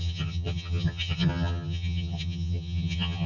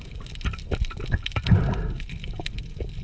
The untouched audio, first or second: second